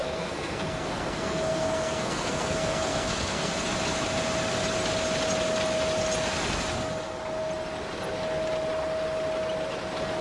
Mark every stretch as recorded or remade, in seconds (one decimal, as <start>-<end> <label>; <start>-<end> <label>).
0.0-3.5 remade; 3.5-10.2 recorded